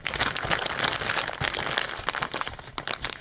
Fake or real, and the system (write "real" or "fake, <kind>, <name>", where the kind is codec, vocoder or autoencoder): real